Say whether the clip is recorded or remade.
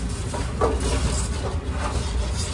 recorded